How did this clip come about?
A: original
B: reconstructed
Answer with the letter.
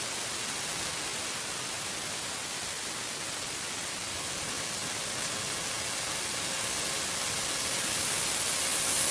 A